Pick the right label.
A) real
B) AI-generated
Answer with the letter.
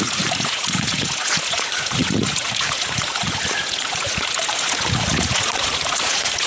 B